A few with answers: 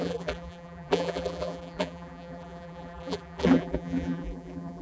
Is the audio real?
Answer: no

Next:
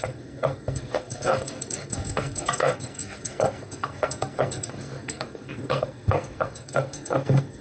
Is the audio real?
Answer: no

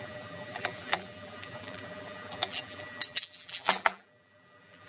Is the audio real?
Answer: no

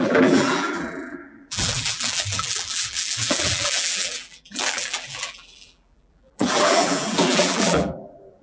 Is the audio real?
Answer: no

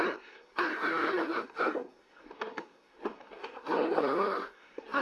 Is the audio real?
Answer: no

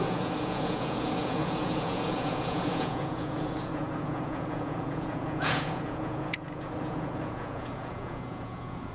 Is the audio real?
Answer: no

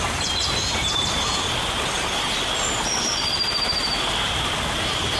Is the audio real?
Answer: yes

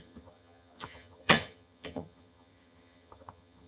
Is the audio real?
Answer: no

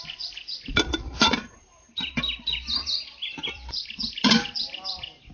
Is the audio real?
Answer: no